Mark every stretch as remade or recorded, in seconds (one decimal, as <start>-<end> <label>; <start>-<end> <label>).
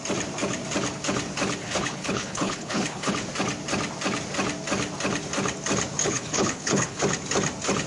0.0-1.6 recorded; 1.6-3.1 remade; 3.1-6.0 recorded; 6.0-7.0 remade; 7.0-7.9 recorded